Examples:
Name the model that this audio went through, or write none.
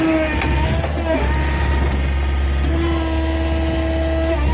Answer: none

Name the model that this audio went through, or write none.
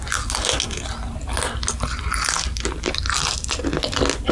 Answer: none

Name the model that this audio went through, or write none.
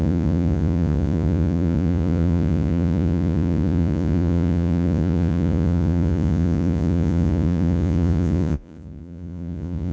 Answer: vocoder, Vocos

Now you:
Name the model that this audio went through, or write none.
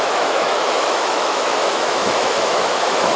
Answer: autoencoder, DAC-VAE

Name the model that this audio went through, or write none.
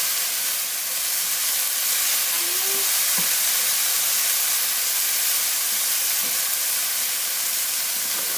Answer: none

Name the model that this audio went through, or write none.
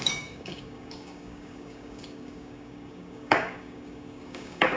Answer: codec, DAC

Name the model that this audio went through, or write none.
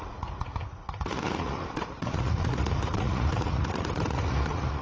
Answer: vocoder, Vocos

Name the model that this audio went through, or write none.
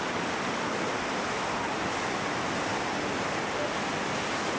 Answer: none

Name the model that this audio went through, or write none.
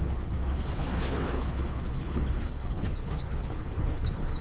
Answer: codec, HILCodec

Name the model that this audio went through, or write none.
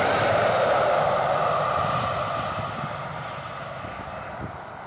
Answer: none